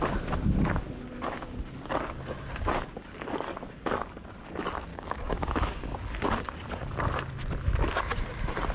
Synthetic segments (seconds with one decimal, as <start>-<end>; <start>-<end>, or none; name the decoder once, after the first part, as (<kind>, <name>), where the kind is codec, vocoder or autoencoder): 4.9-5.8 (codec, DAC)